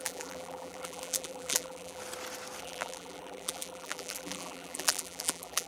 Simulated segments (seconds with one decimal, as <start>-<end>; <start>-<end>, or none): 0.0-2.0; 2.6-5.7